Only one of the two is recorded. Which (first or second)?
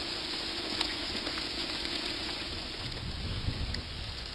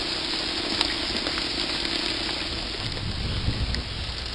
second